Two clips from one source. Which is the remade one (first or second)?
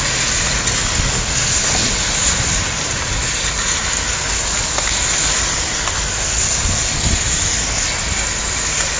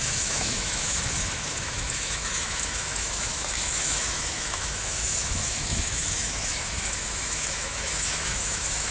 second